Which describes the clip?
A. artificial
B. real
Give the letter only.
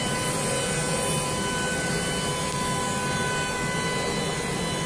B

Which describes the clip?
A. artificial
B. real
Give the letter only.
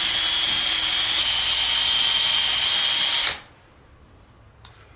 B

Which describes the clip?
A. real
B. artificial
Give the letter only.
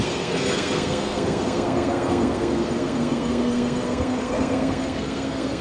B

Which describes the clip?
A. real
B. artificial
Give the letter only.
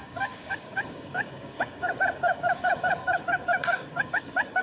B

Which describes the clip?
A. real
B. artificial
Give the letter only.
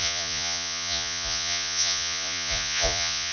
B